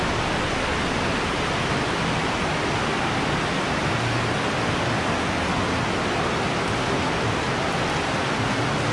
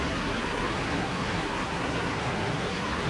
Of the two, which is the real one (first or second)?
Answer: first